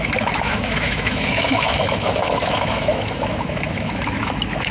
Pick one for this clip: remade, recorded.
remade